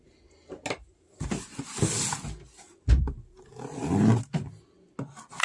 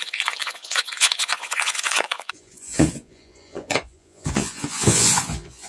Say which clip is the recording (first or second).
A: first